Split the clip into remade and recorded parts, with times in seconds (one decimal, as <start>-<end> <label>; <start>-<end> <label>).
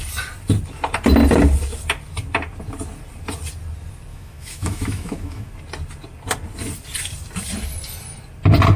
0.0-4.1 recorded; 4.1-5.5 remade; 5.5-8.8 recorded